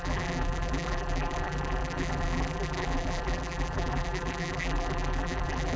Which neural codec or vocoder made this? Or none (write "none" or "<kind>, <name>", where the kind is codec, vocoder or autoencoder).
vocoder, BigVGAN v2